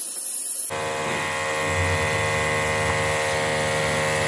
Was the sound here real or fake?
real